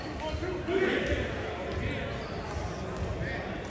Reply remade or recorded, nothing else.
recorded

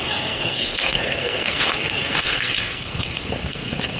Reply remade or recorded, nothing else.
remade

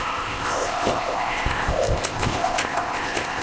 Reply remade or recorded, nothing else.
remade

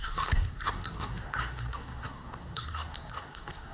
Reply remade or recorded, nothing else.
remade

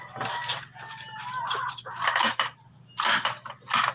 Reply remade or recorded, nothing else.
recorded